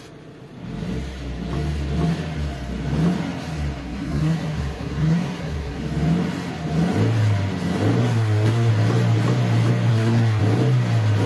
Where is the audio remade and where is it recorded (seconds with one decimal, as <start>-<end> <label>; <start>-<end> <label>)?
0.0-3.8 recorded; 3.8-5.8 remade; 5.8-8.0 recorded; 8.0-8.7 remade; 8.7-9.9 recorded; 9.9-10.4 remade; 10.4-11.3 recorded